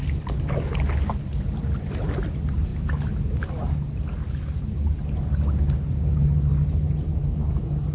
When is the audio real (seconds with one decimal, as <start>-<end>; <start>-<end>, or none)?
0.0-7.9